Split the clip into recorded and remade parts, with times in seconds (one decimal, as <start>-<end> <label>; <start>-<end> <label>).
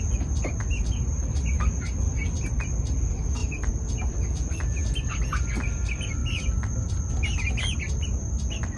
0.0-3.4 recorded; 3.4-4.2 remade; 4.2-8.8 recorded